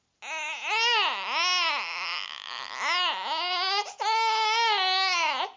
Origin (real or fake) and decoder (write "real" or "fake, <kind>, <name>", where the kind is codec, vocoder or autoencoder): real